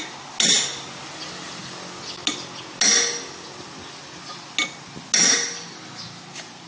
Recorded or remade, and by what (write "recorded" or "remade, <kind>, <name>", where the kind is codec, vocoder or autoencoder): recorded